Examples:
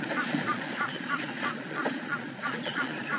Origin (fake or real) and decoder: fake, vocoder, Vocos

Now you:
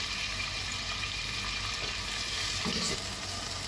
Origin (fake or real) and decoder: real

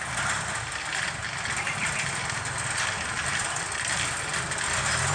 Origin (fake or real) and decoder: real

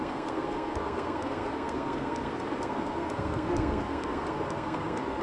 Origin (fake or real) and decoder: fake, codec, SNAC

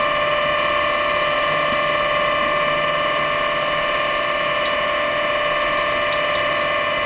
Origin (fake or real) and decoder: real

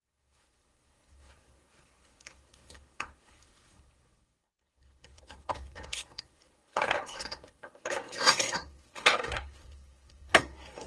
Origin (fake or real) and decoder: fake, codec, SNAC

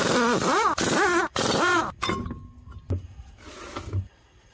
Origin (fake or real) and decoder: real